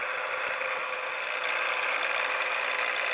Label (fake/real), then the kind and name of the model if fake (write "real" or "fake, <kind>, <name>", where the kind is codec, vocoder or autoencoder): real